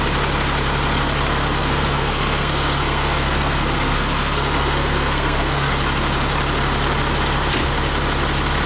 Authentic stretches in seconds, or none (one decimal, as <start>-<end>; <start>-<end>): 0.0-1.3; 5.7-8.7